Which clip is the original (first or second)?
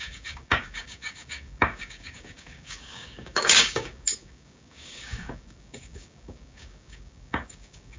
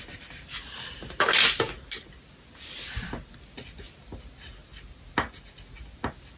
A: second